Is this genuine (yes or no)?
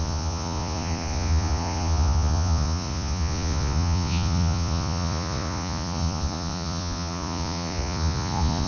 no